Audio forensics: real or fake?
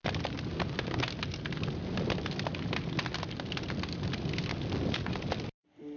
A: real